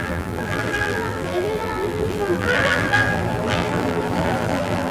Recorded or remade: remade